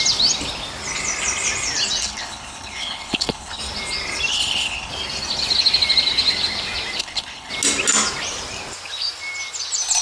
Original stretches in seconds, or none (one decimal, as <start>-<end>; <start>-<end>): 0.0-2.0; 3.6-4.3; 4.9-7.0; 7.5-10.0